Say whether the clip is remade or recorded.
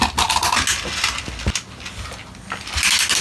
recorded